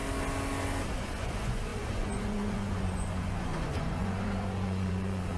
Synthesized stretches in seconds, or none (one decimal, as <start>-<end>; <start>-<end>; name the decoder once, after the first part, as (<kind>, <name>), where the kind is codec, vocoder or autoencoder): 1.0-5.4 (vocoder, Vocos)